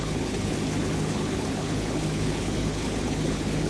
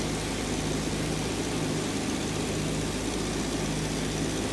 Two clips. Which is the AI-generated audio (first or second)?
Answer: first